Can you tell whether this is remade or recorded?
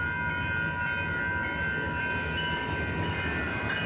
recorded